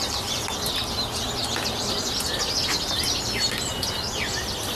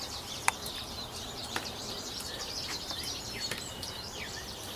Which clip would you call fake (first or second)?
second